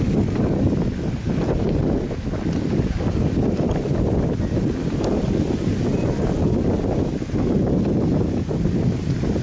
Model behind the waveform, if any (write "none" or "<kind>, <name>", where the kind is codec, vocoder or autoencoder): none